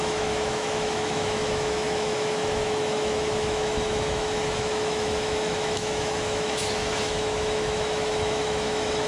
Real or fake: fake